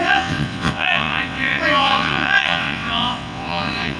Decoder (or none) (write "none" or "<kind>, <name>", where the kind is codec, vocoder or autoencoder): vocoder, WaveNeXt